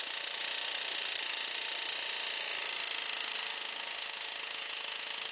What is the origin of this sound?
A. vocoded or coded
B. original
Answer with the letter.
B